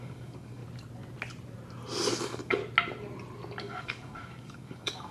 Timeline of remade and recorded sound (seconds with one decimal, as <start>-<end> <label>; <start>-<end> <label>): 0.0-0.6 remade; 0.6-2.1 recorded; 2.1-2.6 remade; 2.6-3.6 recorded; 3.6-5.1 remade